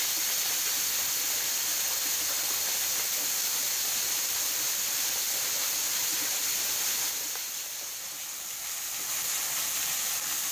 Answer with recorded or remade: recorded